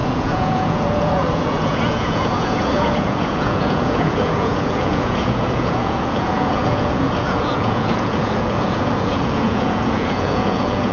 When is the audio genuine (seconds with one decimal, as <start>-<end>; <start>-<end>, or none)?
none